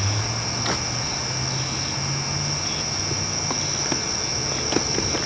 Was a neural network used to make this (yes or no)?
no